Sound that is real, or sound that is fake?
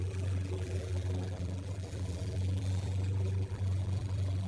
fake